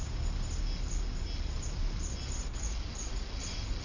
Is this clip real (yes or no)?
yes